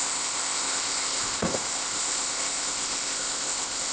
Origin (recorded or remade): remade